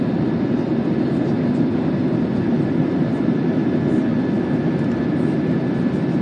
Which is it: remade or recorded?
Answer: recorded